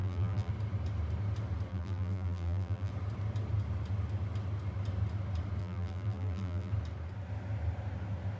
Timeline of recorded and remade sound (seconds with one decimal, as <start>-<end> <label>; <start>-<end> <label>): 0.0-0.5 remade; 0.5-1.7 recorded; 1.7-2.9 remade; 2.9-5.6 recorded; 5.6-6.7 remade; 6.7-8.4 recorded